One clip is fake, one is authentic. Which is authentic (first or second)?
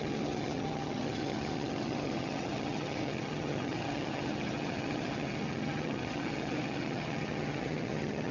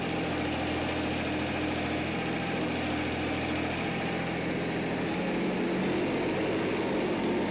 second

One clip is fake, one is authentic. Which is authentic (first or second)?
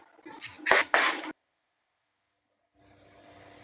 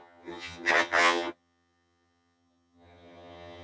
first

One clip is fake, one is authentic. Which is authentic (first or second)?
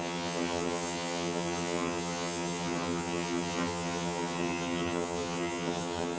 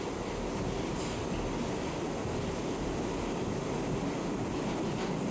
second